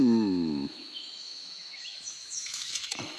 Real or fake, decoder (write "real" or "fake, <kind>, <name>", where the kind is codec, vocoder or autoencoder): fake, autoencoder, DAC-VAE